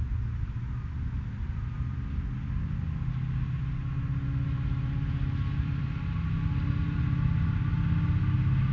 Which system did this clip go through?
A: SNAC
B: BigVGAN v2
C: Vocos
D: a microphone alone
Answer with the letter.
D